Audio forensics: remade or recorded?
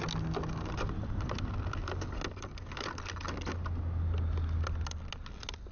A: recorded